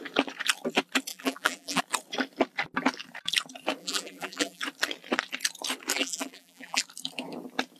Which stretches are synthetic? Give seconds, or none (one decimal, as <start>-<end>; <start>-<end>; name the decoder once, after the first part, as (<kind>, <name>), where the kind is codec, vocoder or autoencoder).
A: 1.1-1.8 (vocoder, BigVGAN v2); 3.8-4.6; 5.9-6.8